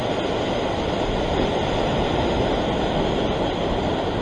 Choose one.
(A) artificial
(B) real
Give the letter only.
B